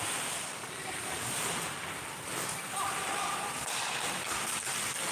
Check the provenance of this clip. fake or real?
real